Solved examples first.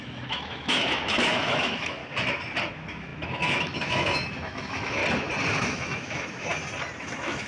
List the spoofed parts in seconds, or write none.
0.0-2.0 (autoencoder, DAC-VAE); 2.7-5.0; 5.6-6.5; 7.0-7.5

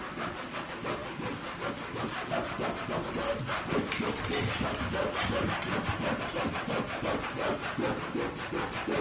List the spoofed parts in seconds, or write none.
none

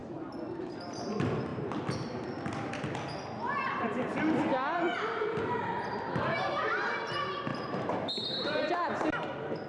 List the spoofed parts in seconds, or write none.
1.5-4.3 (vocoder, BigVGAN v2); 7.5-9.7

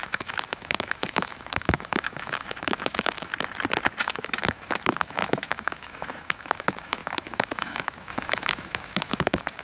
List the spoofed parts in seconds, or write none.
0.0-3.3 (autoencoder, DAC-VAE); 4.0-9.6

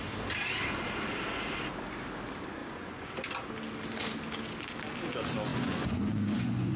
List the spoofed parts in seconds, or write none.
2.6-3.1 (vocoder, Vocos); 5.5-6.8